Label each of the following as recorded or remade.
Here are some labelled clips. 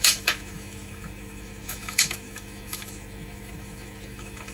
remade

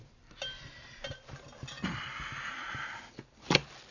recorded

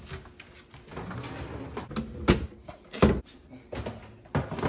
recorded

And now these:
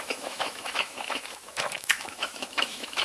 remade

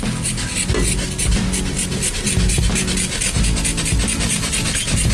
recorded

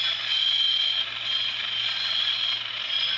recorded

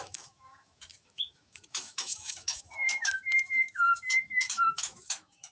remade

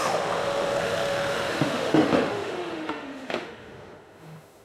remade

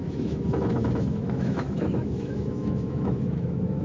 remade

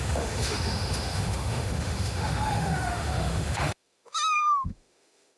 remade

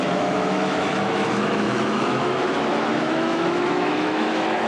remade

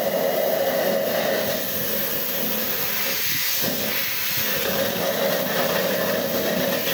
recorded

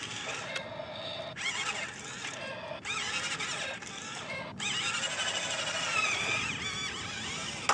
recorded